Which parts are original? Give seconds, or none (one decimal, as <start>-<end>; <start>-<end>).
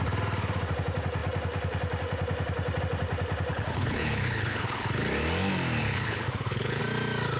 0.0-3.5; 4.9-5.8; 6.8-7.4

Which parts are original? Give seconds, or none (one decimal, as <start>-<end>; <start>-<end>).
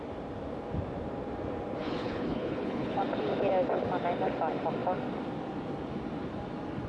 0.0-1.8; 3.0-6.9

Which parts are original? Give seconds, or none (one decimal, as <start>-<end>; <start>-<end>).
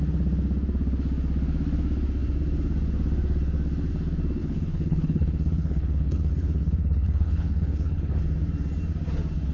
0.0-4.4; 8.2-9.5